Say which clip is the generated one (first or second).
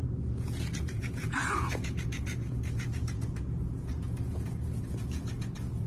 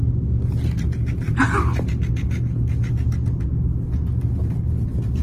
first